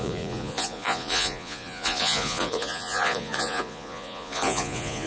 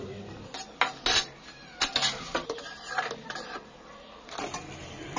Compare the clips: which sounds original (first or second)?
second